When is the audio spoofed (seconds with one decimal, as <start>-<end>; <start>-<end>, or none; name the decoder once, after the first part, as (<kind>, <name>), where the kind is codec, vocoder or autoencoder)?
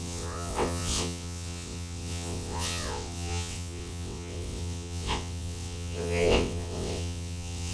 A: 0.0-7.7 (vocoder, WaveNeXt)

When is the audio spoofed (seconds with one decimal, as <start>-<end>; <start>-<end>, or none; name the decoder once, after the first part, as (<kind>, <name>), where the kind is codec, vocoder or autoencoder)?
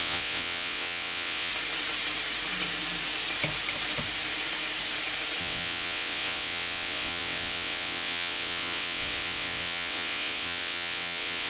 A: 0.0-1.5 (vocoder, WaveNeXt); 5.4-11.5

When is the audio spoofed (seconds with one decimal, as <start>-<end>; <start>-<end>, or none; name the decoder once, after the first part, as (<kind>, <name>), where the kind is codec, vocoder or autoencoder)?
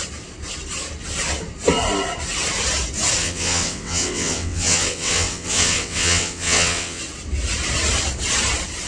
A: 3.2-7.0 (vocoder, WaveNeXt)